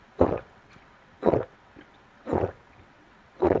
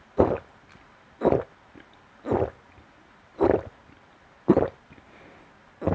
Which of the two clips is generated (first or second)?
first